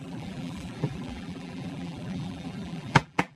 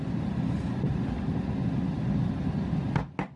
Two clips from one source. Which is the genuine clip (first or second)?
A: second